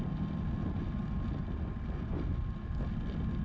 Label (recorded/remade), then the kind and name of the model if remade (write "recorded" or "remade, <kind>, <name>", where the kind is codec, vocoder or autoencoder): recorded